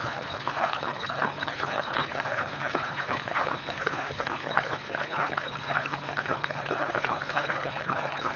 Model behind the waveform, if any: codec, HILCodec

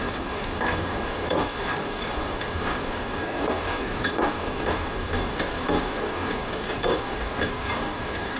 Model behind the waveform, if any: codec, DAC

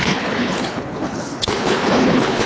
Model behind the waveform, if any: codec, HILCodec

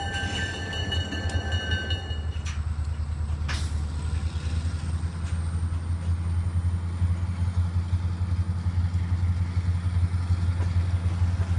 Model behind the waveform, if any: none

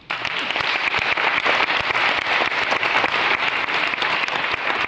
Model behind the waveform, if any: none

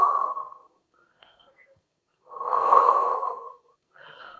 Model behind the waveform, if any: codec, SNAC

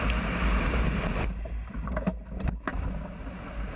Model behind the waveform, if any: none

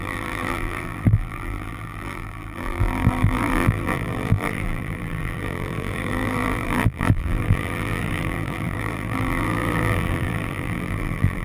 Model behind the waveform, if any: vocoder, BigVGAN v2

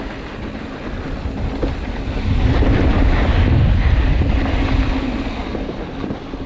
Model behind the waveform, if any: none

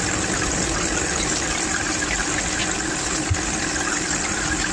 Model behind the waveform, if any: none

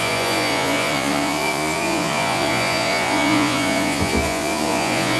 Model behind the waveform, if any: vocoder, Vocos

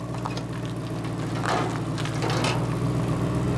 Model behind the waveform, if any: none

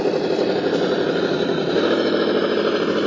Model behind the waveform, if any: none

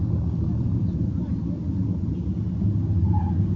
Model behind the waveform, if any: none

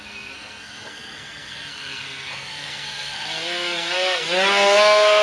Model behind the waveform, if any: codec, SNAC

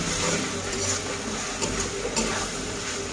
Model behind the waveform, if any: none